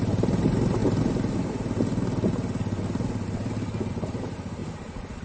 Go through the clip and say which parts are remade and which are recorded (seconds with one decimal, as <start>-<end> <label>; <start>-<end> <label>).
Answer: 0.0-0.8 remade; 0.8-3.9 recorded; 3.9-4.6 remade; 4.6-5.2 recorded